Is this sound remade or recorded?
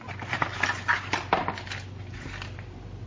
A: recorded